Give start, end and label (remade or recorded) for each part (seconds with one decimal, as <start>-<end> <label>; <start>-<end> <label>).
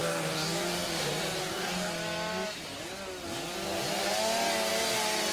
0.0-0.9 remade; 0.9-1.4 recorded; 1.4-1.9 remade; 1.9-5.3 recorded